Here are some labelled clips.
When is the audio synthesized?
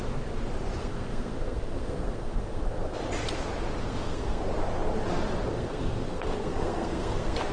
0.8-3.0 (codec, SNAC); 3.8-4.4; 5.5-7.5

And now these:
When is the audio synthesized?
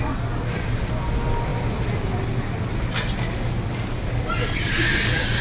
none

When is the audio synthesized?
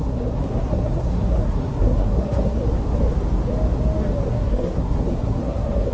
0.0-2.6 (codec, SNAC); 4.3-5.9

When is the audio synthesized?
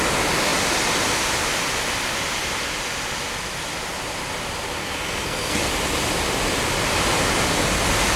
4.8-5.7 (codec, SNAC)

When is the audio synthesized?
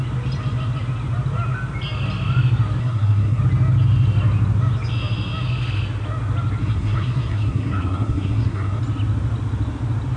2.8-3.4 (codec, SNAC); 6.6-8.8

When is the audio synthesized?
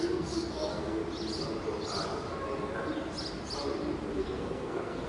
0.0-1.0 (codec, SNAC); 4.1-5.1